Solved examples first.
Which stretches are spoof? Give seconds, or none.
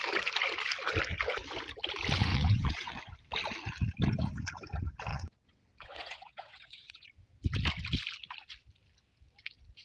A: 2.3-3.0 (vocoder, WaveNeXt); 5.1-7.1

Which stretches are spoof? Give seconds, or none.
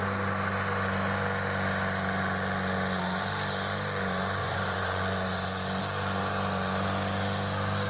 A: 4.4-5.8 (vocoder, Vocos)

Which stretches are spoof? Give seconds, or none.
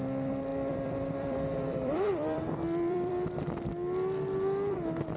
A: 0.5-3.1 (vocoder, BigVGAN v2)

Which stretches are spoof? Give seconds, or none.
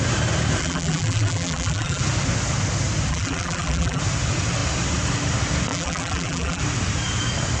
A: 0.6-2.0 (vocoder, BigVGAN v2); 3.1-4.0; 5.7-6.6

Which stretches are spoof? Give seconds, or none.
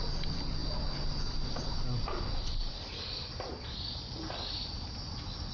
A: none